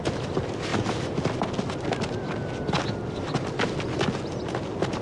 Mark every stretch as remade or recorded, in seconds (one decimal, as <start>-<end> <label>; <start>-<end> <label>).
0.0-5.0 recorded